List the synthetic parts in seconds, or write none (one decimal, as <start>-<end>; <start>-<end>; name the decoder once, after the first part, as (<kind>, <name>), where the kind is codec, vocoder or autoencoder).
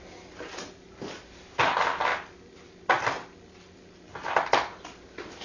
none